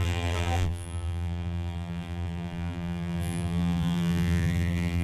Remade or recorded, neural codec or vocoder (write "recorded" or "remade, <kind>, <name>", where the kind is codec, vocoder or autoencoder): remade, vocoder, BigVGAN v2